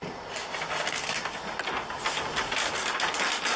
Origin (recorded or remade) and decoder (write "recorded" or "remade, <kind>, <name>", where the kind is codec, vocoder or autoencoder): recorded